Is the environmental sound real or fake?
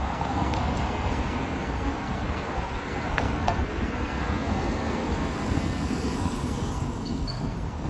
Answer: fake